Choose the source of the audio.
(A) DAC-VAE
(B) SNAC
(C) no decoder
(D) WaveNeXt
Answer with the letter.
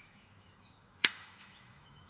A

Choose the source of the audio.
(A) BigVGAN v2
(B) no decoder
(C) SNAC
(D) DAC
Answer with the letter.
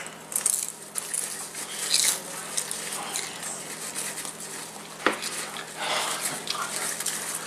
B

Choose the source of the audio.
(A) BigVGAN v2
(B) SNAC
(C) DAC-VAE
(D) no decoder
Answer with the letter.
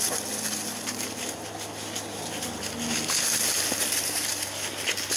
D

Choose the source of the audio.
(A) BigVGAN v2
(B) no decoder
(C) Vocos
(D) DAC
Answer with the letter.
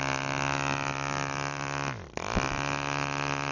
B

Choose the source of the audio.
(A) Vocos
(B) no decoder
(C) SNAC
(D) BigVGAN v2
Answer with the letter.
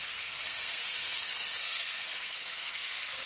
C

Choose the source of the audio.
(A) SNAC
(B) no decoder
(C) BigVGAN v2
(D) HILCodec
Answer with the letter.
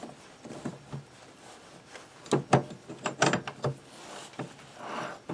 B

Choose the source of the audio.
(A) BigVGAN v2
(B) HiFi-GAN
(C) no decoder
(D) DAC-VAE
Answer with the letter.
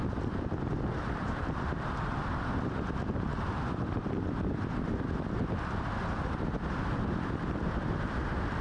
A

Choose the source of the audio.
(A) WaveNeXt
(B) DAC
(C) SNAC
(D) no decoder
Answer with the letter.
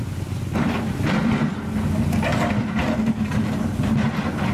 D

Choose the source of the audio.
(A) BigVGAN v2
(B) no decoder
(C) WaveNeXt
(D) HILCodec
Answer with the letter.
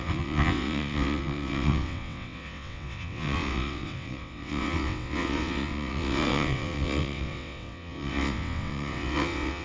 C